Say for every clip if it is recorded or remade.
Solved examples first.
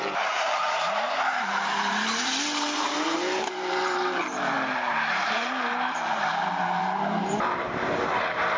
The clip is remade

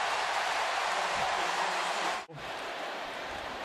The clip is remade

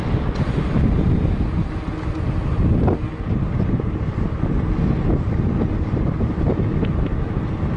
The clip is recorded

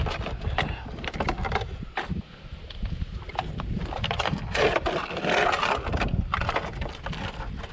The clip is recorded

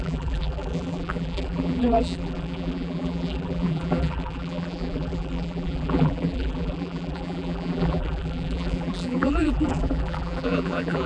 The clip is remade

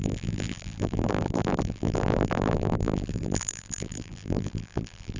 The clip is remade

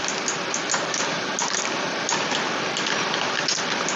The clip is recorded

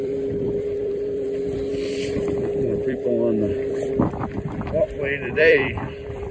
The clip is remade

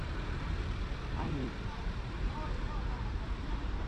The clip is remade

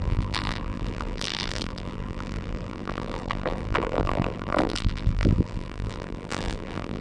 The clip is remade